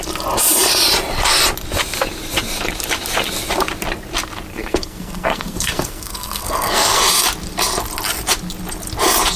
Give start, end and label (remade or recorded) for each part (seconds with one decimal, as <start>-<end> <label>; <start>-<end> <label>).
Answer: 0.0-4.5 recorded; 4.5-7.0 remade; 7.0-9.4 recorded